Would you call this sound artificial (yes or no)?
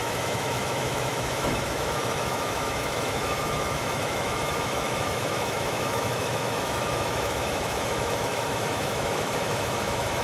yes